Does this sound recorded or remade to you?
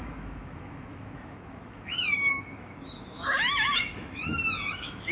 remade